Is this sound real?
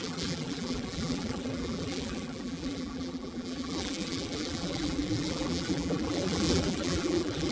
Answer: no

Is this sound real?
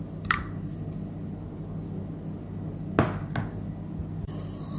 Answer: yes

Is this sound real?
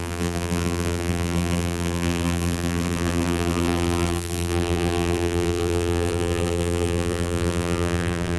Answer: no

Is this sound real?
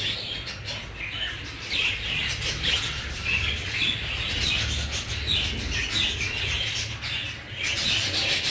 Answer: yes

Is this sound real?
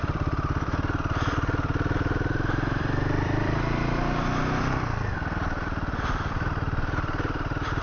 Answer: no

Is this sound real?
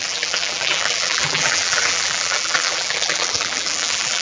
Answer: no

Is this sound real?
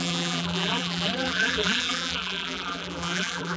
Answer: no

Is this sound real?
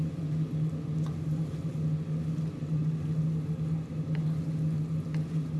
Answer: yes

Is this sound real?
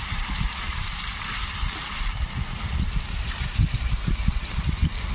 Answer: yes